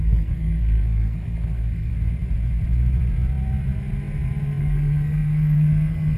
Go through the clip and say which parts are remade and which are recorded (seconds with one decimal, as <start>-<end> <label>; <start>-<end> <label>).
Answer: 0.0-1.9 remade; 1.9-4.6 recorded; 4.6-6.2 remade